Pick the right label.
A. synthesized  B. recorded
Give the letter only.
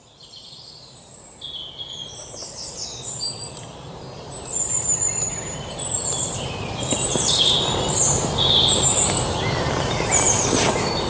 A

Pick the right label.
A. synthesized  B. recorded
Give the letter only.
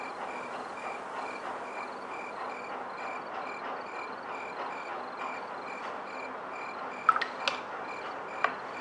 B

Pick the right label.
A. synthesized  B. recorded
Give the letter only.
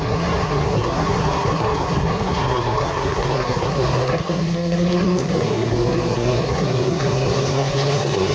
A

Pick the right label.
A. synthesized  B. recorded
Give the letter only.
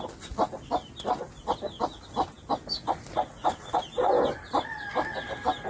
B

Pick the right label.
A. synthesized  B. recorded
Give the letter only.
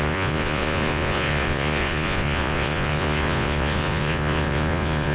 A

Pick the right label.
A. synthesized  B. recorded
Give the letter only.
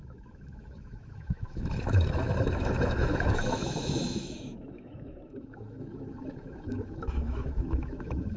A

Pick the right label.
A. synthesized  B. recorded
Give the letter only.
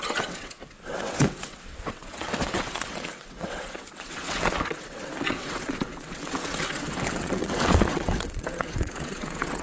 A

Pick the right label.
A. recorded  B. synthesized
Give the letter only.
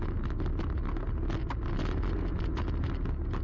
A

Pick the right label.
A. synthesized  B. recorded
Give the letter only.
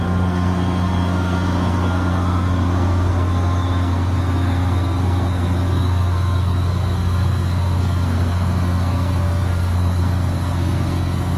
A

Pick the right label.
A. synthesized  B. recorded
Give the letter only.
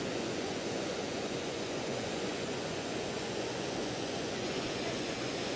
A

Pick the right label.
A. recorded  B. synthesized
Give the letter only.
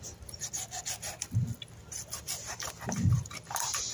A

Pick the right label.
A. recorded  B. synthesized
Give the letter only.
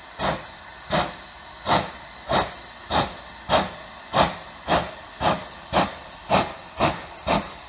A